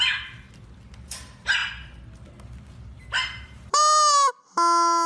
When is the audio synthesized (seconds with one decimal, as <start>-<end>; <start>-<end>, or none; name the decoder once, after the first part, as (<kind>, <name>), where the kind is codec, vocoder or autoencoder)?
none